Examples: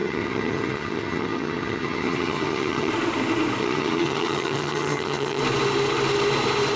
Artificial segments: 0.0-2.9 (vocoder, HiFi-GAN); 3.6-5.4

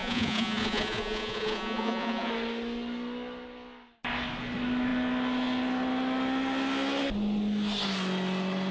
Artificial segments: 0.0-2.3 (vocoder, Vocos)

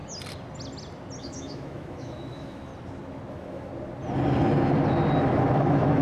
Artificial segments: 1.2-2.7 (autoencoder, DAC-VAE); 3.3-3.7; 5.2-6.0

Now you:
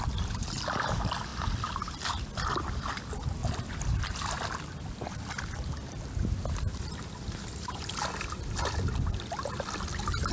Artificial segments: none

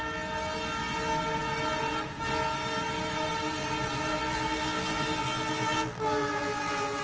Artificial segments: 4.1-7.0 (vocoder, BigVGAN v2)

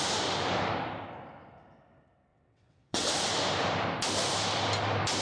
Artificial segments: 2.3-3.1 (vocoder, WaveNeXt)

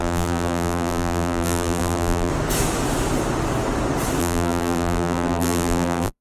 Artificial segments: 0.0-2.3 (vocoder, BigVGAN v2); 4.2-6.2